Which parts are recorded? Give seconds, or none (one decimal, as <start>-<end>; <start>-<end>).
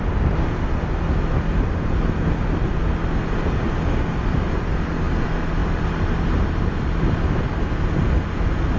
0.0-8.8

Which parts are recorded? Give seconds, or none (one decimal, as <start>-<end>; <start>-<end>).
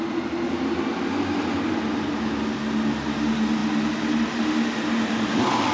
0.0-5.7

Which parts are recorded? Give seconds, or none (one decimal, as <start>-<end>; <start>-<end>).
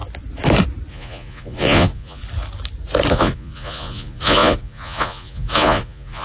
0.0-0.9; 2.2-3.1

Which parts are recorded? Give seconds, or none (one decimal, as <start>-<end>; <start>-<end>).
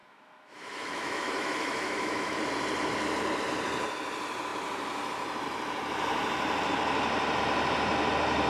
2.4-8.5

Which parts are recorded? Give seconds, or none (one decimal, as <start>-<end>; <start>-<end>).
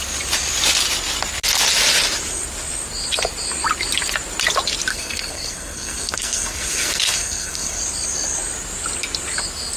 0.0-4.9; 7.8-9.8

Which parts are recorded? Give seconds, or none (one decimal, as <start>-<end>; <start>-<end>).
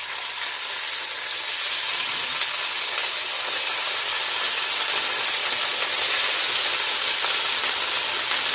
0.0-8.5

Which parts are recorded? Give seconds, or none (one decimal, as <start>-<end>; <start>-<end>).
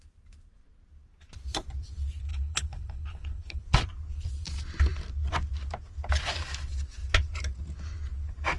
0.0-2.3; 3.6-8.6